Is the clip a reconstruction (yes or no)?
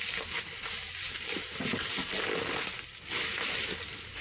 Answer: yes